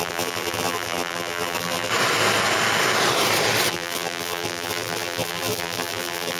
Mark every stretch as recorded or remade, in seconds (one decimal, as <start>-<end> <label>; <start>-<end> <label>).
0.0-1.9 remade; 1.9-3.7 recorded; 3.7-6.4 remade